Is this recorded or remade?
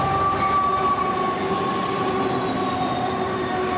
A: recorded